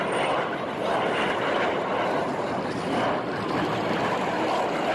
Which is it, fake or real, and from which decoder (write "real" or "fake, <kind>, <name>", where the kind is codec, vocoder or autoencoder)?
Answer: real